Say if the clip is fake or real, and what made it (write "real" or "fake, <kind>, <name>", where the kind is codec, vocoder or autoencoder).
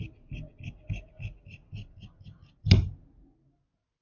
real